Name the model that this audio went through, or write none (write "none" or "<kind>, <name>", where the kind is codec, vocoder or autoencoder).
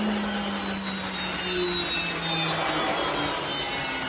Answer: none